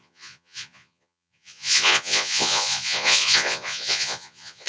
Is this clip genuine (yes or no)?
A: no